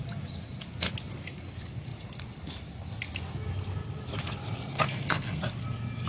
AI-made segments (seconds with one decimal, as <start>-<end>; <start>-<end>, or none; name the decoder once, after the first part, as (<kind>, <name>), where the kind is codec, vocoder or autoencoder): 4.7-5.4 (codec, SNAC)